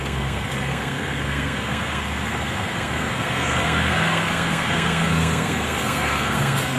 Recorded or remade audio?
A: remade